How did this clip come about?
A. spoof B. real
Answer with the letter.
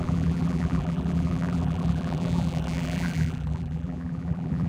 A